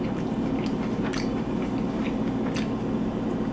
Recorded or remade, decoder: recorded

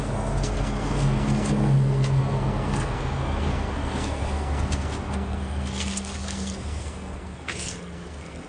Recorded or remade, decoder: remade, codec, SNAC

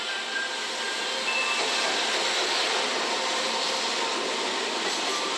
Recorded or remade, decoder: recorded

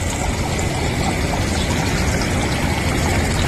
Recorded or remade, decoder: recorded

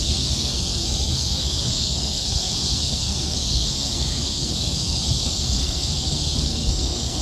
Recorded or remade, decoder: remade, codec, SNAC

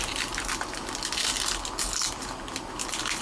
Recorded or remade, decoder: recorded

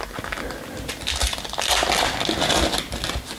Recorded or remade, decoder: recorded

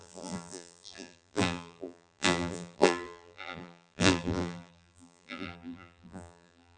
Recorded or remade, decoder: remade, vocoder, BigVGAN v2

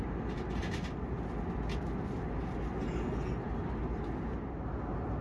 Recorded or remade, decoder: recorded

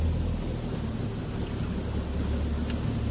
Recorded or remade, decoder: recorded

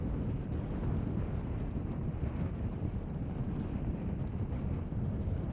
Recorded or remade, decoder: recorded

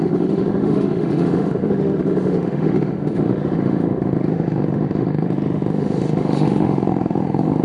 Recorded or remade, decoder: remade, autoencoder, DAC-VAE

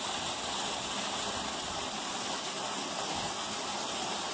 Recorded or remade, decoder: recorded